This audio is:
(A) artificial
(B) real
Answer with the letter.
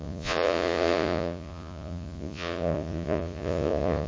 A